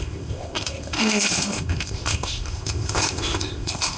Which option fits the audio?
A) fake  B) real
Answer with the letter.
A